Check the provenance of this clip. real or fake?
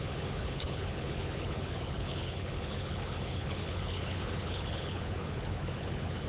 fake